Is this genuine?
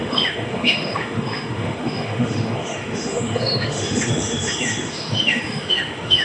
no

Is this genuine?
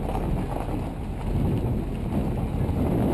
yes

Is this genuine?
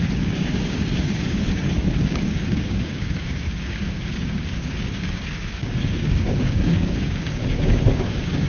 no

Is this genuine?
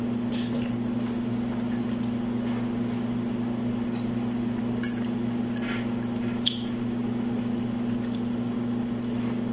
yes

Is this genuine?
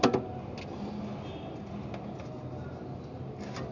yes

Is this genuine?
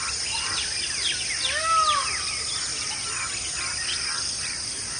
yes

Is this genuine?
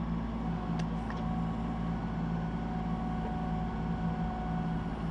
yes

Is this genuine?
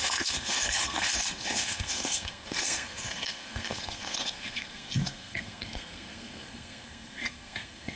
no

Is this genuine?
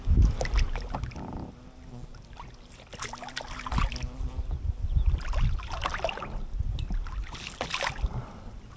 yes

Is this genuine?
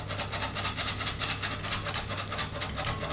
yes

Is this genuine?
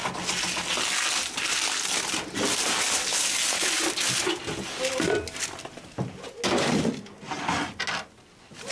yes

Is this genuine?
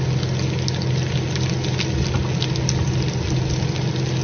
yes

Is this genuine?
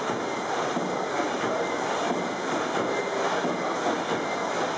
yes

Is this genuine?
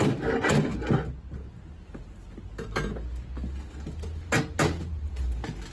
yes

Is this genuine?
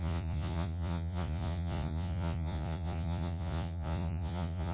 no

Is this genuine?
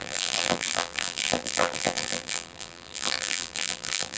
no